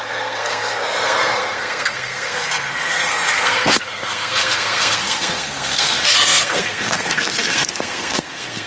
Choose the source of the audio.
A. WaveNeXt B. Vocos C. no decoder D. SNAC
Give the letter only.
D